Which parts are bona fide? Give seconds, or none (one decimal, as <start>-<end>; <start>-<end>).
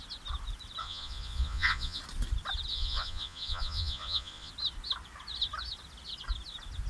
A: 0.0-0.8; 2.0-2.7; 4.5-6.9